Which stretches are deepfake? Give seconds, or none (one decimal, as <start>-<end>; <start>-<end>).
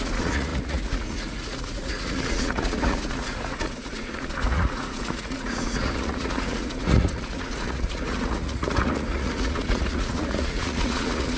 0.0-11.4